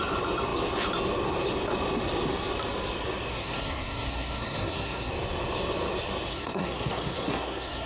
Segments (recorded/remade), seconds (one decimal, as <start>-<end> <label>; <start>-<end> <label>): 0.0-3.3 recorded; 3.3-5.1 remade; 5.1-6.3 recorded; 6.3-7.9 remade